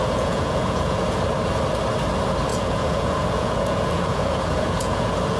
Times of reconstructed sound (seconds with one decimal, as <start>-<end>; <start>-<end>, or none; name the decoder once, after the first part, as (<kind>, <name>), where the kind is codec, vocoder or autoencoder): 0.0-1.2 (vocoder, Vocos); 2.5-5.4

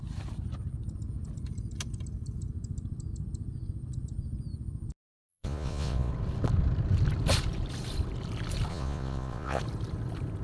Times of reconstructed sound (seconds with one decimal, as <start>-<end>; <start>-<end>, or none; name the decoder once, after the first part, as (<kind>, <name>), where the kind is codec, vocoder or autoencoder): 5.3-6.1 (vocoder, Vocos); 8.7-9.6

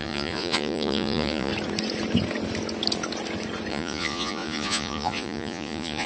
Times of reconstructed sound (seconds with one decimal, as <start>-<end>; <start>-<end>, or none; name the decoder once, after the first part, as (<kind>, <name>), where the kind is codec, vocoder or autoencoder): 0.0-1.5 (vocoder, Vocos); 3.7-6.1